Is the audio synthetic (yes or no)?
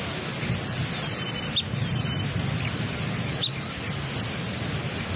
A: no